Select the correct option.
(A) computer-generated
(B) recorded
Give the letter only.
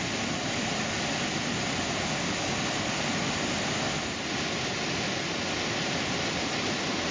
B